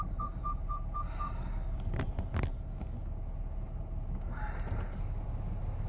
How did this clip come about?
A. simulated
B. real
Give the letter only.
B